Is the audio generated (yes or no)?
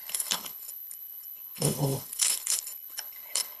yes